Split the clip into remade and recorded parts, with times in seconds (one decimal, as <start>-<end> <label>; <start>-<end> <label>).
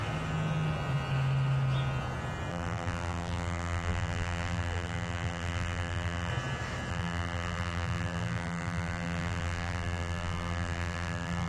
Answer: 0.0-2.5 recorded; 2.5-6.3 remade; 6.3-6.9 recorded; 6.9-11.5 remade